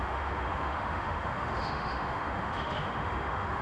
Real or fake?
fake